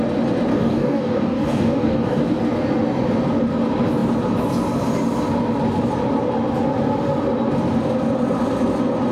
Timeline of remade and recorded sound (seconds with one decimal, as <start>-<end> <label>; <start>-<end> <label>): 0.0-0.5 recorded; 0.5-2.2 remade; 2.2-9.1 recorded